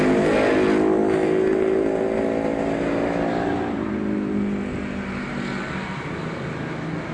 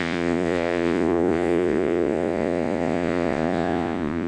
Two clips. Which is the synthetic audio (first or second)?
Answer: second